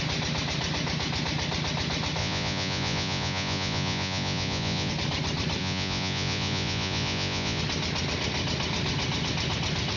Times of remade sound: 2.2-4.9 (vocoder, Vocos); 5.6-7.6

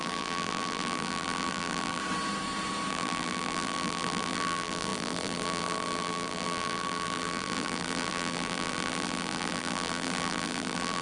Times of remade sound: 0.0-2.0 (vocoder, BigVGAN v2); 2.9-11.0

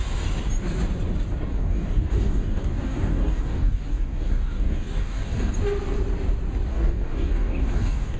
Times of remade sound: 1.5-5.5 (codec, DAC); 6.7-8.2

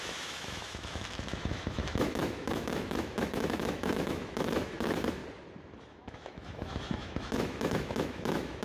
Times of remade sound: 0.0-5.2 (autoencoder, DAC-VAE); 5.9-8.6

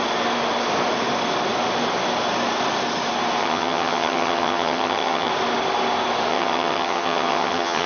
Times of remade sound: 3.4-5.3 (vocoder, HiFi-GAN); 6.3-7.9